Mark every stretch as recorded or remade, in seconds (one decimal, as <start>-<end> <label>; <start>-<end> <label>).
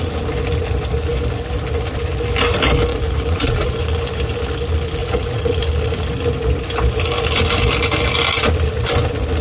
0.0-2.9 recorded; 2.9-3.8 remade; 3.8-5.0 recorded; 5.0-5.6 remade; 5.6-9.4 recorded